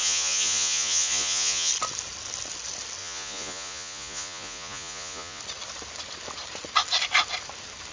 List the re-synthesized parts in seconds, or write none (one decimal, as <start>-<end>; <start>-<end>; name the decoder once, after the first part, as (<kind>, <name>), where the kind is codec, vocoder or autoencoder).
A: 0.0-1.7 (vocoder, Vocos); 3.0-5.4